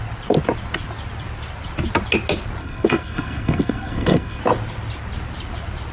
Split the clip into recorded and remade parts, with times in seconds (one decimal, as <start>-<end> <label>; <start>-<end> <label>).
0.0-2.6 recorded; 2.6-4.4 remade; 4.4-5.9 recorded